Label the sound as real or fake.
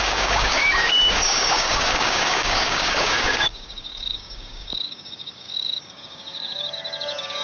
fake